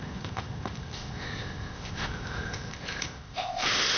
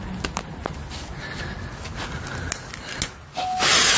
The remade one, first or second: first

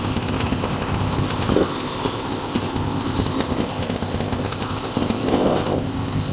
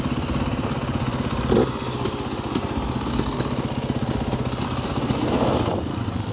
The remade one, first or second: first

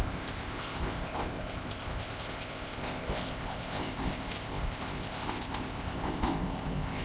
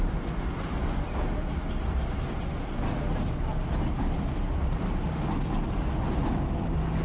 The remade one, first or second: first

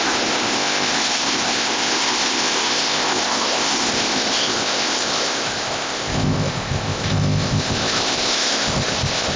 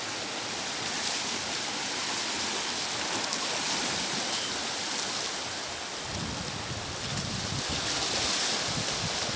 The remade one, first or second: first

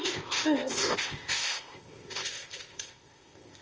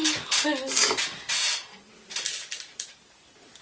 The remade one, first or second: first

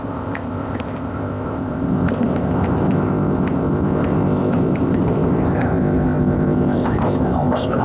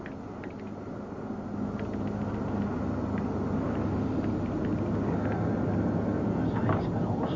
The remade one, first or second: first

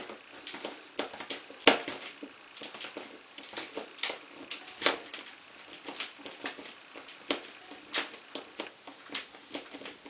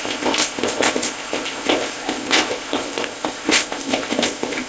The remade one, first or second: second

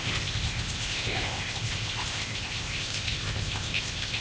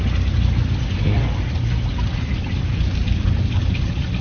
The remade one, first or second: first